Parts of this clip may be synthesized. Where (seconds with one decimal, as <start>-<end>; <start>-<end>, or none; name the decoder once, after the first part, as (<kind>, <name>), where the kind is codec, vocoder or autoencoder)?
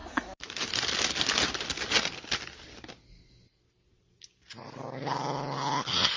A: none